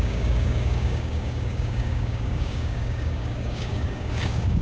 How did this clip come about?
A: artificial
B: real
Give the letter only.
A